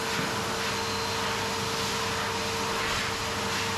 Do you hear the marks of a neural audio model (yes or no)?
no